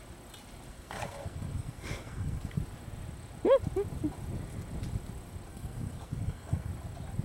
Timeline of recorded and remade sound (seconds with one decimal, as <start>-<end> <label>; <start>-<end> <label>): 0.0-0.7 recorded; 0.7-2.6 remade; 2.6-5.5 recorded; 5.5-6.7 remade; 6.7-7.2 recorded